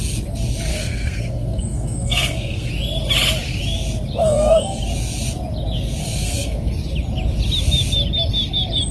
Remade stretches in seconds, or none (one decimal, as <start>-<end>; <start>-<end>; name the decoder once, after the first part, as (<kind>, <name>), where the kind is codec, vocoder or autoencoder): 0.7-2.7 (codec, SNAC); 4.2-4.8; 6.0-6.7